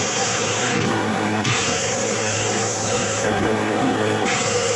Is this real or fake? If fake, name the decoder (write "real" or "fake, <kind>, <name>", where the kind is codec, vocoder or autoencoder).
fake, codec, SNAC